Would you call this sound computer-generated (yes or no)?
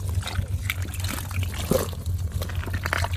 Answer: no